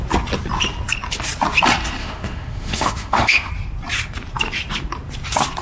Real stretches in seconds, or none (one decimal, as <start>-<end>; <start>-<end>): 0.0-2.0; 3.5-5.6